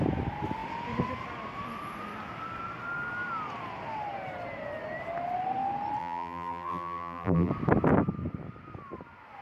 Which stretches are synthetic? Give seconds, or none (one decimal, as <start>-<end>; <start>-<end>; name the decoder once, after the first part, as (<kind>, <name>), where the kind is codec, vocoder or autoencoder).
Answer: 6.0-7.5 (vocoder, BigVGAN v2)